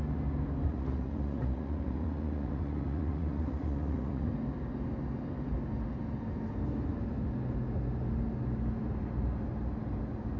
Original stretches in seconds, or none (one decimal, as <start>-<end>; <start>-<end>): 0.0-0.7; 4.3-10.4